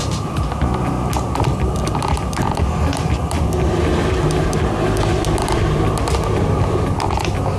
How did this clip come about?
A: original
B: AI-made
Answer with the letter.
A